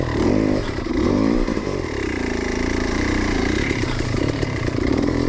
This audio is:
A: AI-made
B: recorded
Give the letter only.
A